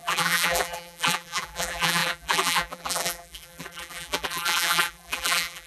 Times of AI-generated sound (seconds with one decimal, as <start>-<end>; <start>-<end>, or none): 0.0-5.7